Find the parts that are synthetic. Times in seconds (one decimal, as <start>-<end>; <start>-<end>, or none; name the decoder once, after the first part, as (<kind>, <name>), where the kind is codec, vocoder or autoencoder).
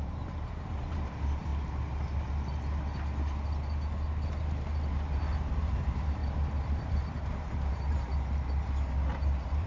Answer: 0.0-1.5 (vocoder, BigVGAN v2); 5.7-6.2; 6.7-8.1; 9.1-9.7